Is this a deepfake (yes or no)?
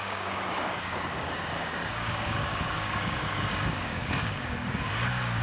yes